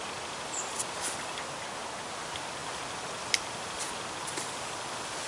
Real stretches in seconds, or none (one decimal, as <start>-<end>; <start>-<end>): 0.0-5.3